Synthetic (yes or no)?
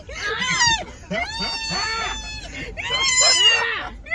no